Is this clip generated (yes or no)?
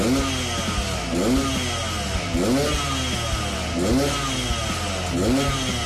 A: no